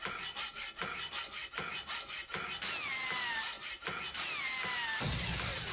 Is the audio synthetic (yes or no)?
no